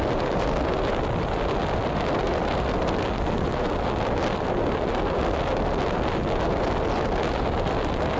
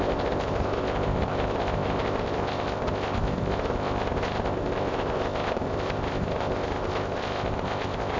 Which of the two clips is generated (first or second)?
second